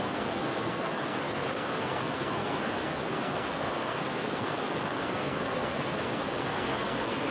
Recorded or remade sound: remade